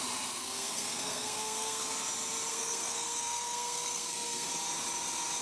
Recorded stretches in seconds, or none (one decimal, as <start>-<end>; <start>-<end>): 0.0-0.4; 1.9-2.5; 4.5-5.4

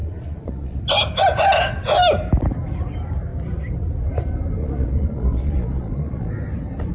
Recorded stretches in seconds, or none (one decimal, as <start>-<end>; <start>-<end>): 0.8-4.6; 6.3-6.9

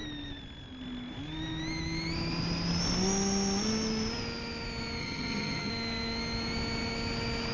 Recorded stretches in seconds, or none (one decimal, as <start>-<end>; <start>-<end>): 0.0-5.0; 5.7-7.5

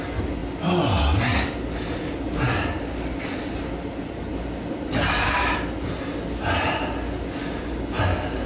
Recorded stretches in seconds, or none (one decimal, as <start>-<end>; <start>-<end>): 0.0-8.5

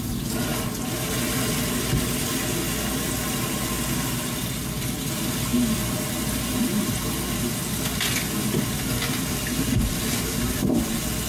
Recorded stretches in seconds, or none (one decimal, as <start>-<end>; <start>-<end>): 0.0-11.3